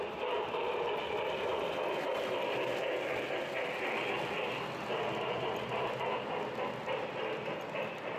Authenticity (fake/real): real